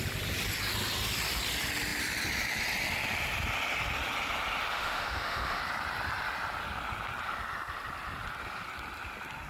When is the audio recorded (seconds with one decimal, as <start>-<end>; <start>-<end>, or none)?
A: 0.0-4.7; 5.6-9.5